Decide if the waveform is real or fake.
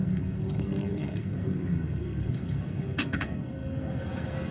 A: fake